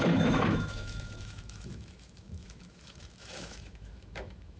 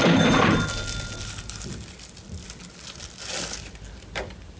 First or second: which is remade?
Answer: first